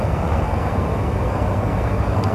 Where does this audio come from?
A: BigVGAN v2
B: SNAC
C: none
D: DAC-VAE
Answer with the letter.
B